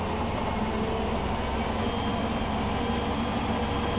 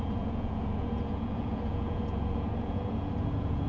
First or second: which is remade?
second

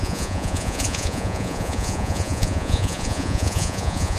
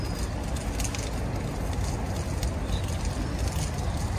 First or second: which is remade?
first